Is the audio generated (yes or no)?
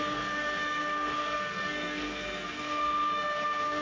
yes